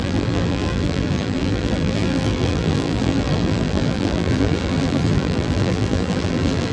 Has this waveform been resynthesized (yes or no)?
yes